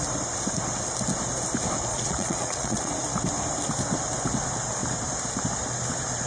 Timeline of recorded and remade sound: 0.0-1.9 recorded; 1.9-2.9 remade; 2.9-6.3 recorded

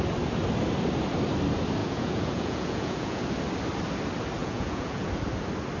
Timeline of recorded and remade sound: 0.0-1.8 recorded; 1.8-3.2 remade; 3.2-4.4 recorded; 4.4-5.1 remade; 5.1-5.8 recorded

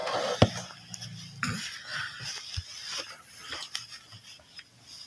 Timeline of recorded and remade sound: 0.0-5.1 recorded

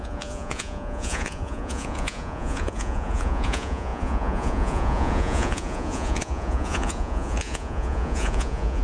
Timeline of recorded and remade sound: 0.0-8.8 remade